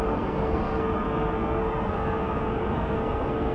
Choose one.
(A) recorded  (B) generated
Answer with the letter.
B